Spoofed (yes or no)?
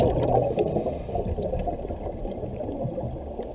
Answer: no